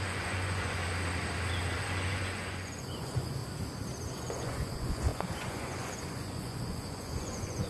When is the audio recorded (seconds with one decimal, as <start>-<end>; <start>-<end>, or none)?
0.8-1.8; 3.4-4.1